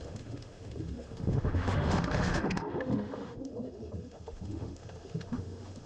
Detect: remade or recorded remade